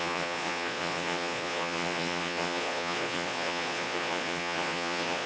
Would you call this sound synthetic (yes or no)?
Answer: yes